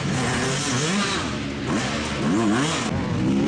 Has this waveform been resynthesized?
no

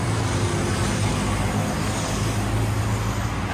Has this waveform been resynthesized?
no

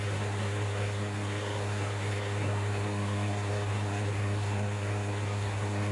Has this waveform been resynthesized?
yes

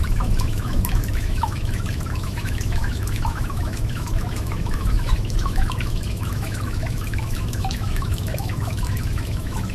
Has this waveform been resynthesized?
yes